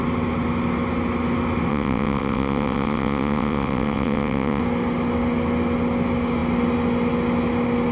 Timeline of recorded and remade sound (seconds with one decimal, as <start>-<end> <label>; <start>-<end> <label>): 0.0-1.7 recorded; 1.7-4.6 remade; 4.6-7.9 recorded